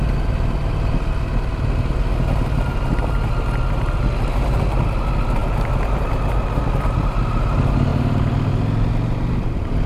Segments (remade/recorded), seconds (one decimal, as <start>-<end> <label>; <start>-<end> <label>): 0.0-7.9 recorded; 7.9-8.5 remade; 8.5-9.9 recorded